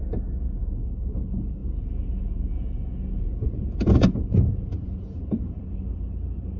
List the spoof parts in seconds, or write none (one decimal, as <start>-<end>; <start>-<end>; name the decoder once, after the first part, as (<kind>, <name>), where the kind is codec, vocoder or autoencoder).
1.6-5.6 (vocoder, Vocos)